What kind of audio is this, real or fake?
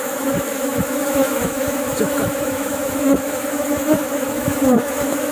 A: fake